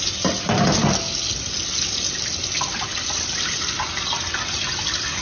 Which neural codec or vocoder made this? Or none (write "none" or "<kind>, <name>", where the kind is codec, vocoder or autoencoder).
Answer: none